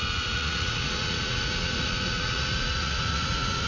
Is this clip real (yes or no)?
no